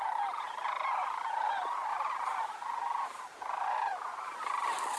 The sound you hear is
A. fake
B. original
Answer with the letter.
B